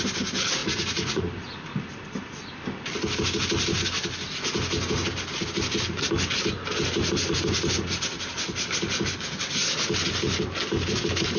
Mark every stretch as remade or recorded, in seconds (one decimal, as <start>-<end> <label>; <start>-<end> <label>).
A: 0.0-0.6 recorded; 0.6-1.2 remade; 1.2-11.4 recorded